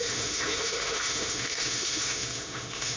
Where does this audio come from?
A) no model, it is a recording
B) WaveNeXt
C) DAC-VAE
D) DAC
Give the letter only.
C